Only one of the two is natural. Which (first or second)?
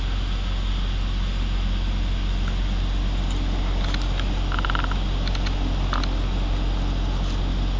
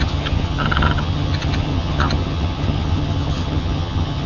first